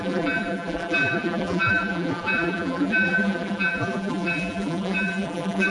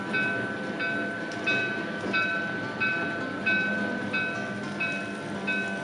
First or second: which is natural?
second